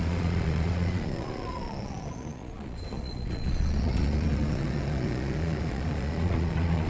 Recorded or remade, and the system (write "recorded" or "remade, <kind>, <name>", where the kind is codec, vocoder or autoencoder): remade, vocoder, Vocos